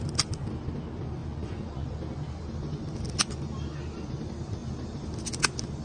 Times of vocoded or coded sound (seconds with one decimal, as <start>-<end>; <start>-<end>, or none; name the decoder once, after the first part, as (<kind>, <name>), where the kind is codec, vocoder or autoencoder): 1.2-2.0 (vocoder, Vocos)